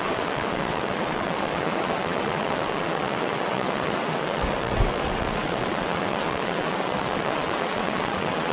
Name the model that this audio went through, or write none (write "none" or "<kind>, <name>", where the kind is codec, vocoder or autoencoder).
vocoder, WaveNeXt